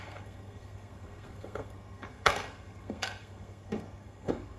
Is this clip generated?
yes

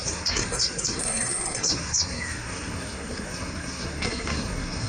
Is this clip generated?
yes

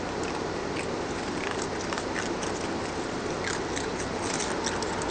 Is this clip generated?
no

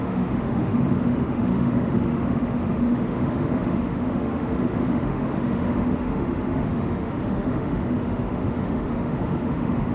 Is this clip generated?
yes